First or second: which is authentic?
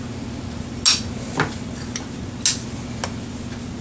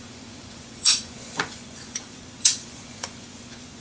first